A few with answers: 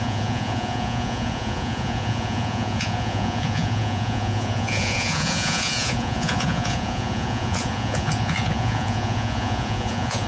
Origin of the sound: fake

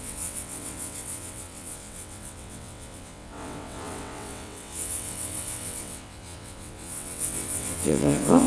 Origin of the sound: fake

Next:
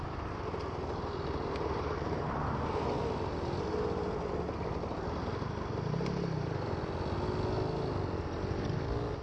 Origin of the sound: real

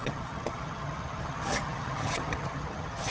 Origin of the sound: fake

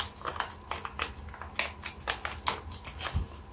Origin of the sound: real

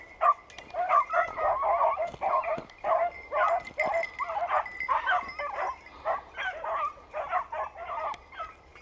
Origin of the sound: real